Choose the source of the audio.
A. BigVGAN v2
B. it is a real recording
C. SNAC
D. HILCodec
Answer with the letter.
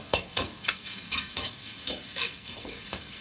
C